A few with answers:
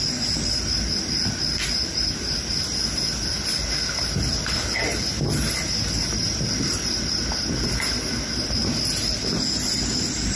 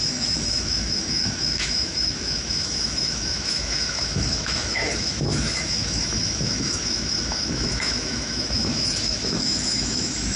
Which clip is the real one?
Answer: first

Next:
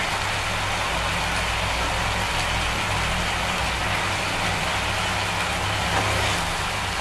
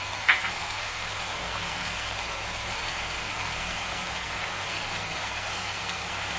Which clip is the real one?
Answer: first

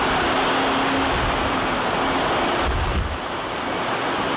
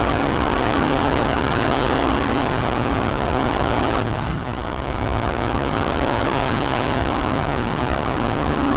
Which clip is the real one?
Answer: first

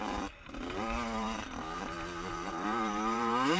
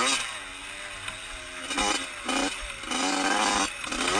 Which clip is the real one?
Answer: second